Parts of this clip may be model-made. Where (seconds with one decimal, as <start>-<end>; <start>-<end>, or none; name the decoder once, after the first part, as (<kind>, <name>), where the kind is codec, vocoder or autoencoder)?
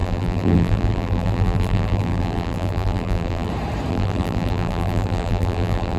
0.0-3.5 (vocoder, BigVGAN v2); 3.9-6.0